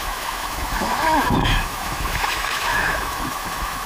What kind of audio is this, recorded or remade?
remade